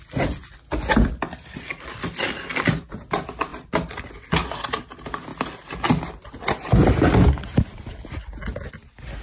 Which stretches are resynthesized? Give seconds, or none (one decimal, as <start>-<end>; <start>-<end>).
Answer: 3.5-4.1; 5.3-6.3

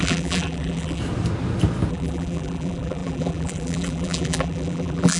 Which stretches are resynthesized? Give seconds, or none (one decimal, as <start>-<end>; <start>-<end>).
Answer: 0.0-1.0; 1.9-5.2

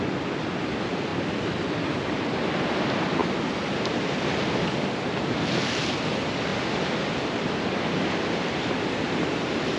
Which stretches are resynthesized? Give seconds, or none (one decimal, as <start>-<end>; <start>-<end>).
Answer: 6.5-8.8

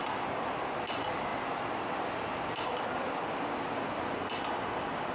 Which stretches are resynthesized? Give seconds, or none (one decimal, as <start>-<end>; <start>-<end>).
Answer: none

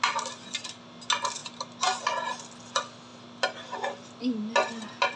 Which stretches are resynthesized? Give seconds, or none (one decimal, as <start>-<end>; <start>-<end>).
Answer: none

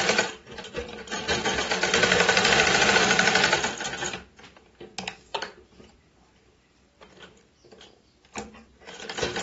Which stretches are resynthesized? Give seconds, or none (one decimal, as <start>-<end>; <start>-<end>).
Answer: 1.9-3.3; 5.3-6.0